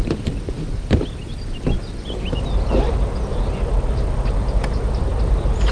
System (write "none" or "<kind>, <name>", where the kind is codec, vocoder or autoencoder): none